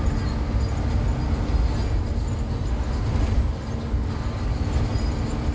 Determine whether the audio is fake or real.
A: real